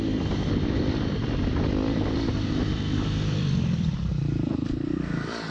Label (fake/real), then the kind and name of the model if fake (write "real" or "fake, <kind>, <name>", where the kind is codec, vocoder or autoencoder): fake, vocoder, BigVGAN v2